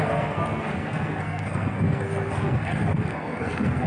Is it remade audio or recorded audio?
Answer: remade